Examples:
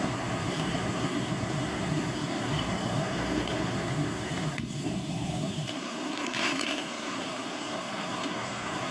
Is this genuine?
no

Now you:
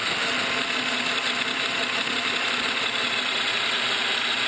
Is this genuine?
yes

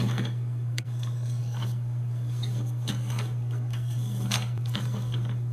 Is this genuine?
no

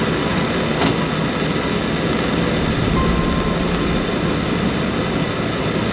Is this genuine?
yes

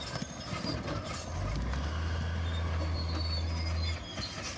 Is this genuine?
yes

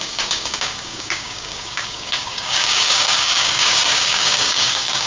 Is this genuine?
no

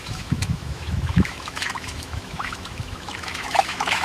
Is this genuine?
no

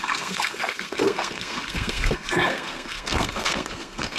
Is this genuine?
no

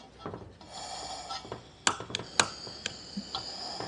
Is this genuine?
yes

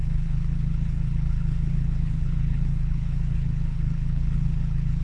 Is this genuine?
no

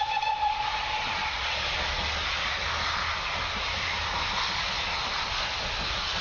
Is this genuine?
yes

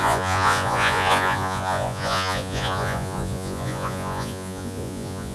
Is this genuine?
no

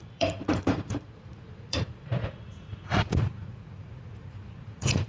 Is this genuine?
no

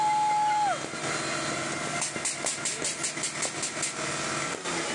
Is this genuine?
yes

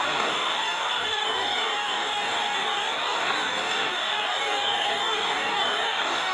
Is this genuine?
no